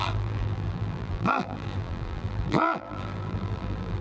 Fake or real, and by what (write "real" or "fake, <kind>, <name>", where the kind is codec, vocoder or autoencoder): fake, vocoder, BigVGAN v2